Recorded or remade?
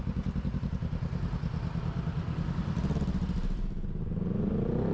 recorded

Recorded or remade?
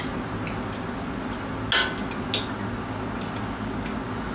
recorded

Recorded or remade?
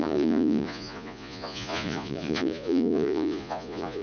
remade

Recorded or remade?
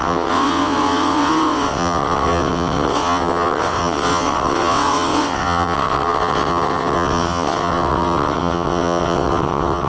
remade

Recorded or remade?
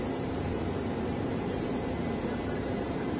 remade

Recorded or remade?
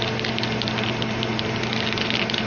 remade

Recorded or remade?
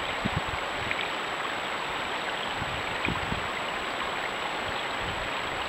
recorded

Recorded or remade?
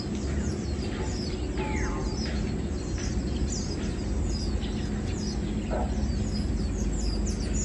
recorded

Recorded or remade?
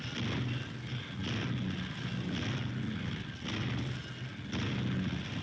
recorded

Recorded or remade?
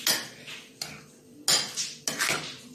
recorded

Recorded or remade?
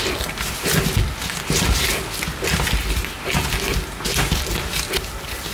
recorded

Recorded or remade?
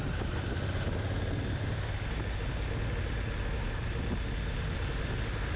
recorded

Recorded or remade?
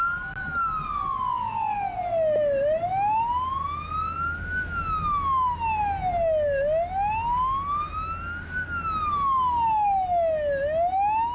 recorded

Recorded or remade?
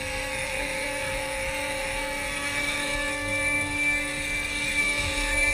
remade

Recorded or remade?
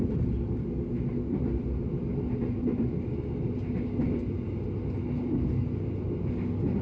recorded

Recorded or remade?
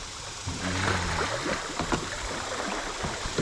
recorded